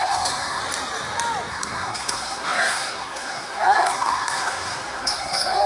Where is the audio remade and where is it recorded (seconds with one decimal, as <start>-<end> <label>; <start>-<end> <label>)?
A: 0.0-0.6 remade; 0.6-1.5 recorded; 1.5-5.7 remade